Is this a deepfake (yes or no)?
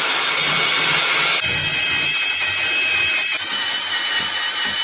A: no